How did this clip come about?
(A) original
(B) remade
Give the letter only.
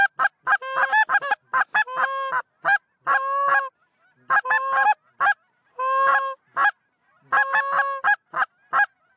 A